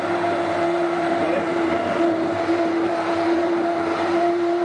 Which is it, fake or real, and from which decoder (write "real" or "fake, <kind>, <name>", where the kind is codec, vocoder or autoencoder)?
fake, vocoder, BigVGAN v2